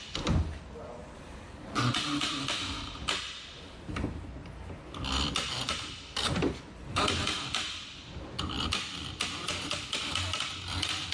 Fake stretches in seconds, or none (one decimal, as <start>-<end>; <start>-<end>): 1.0-2.8